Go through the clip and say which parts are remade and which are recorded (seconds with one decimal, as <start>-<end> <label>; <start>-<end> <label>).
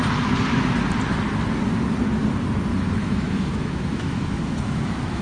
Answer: 0.0-2.7 recorded; 2.7-5.2 remade